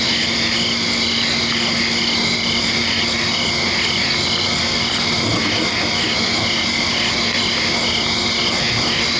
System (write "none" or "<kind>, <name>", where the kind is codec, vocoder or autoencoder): none